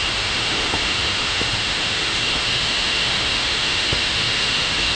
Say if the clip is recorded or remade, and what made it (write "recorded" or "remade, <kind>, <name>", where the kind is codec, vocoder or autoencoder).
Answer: remade, autoencoder, DAC-VAE